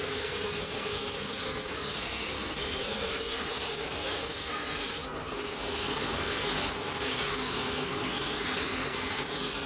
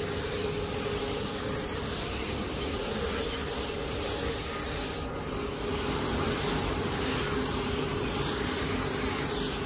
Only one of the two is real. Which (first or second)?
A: second